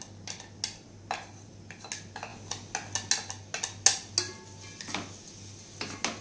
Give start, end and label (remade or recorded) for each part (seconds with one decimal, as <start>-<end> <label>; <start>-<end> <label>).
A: 0.0-6.2 recorded